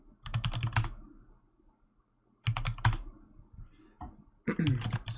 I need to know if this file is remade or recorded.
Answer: recorded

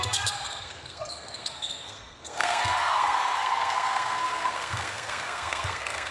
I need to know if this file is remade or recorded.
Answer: remade